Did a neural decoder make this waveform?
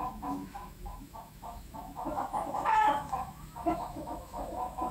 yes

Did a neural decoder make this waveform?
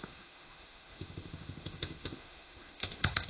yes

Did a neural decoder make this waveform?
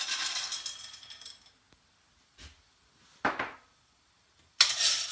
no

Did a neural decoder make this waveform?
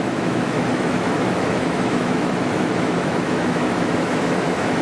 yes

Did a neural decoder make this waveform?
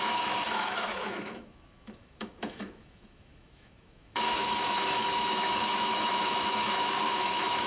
yes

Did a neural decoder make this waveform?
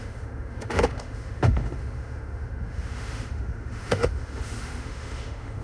yes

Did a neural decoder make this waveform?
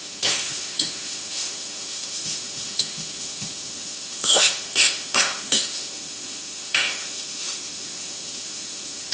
yes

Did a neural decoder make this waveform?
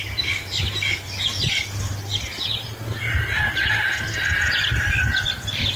no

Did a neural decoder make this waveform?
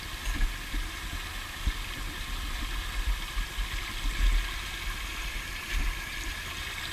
no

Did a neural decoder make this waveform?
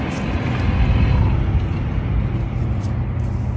no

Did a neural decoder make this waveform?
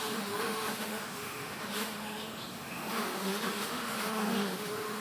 yes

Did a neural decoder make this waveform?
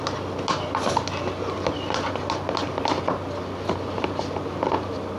no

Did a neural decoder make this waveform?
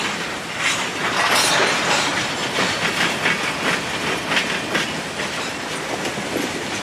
no